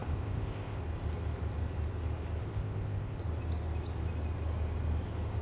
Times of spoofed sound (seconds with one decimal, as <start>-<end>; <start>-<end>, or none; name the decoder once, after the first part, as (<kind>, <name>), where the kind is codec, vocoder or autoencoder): 0.0-0.8 (codec, ZipCodec); 2.5-3.2